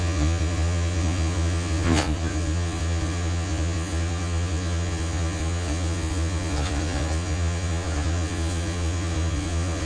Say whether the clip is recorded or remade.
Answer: remade